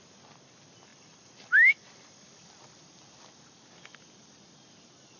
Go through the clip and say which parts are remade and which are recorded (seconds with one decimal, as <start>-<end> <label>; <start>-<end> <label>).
0.0-0.9 recorded; 0.9-4.0 remade; 4.0-5.2 recorded